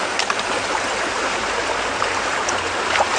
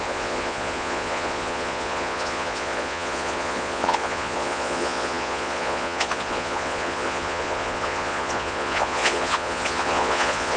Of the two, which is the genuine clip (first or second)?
first